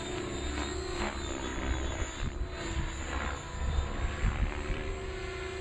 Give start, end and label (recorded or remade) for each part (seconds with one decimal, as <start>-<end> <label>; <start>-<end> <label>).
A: 0.0-5.6 remade